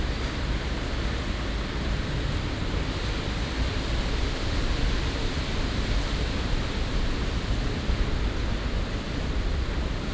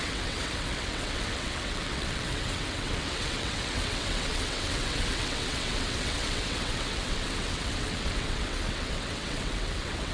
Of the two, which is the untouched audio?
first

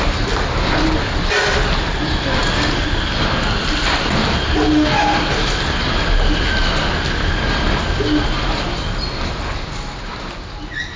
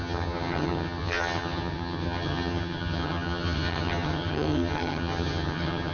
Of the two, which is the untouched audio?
first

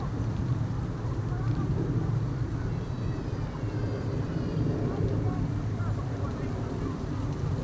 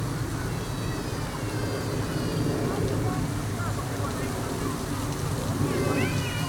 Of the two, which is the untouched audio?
second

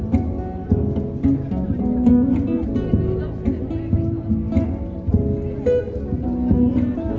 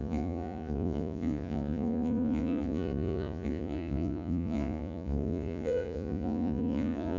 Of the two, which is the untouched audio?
first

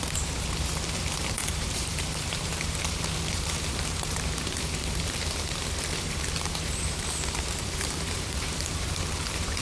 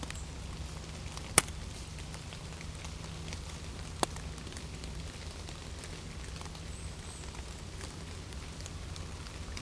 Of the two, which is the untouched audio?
second